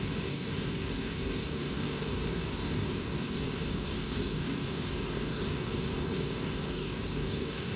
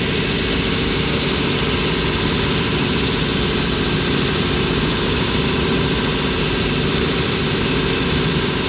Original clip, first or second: second